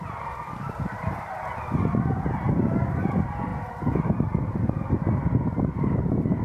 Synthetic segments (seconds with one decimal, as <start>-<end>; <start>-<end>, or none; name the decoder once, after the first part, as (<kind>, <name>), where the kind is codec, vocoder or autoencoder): none